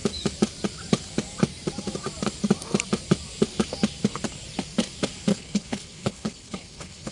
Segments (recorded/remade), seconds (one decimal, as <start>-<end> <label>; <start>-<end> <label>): 0.0-5.3 recorded; 5.3-7.1 remade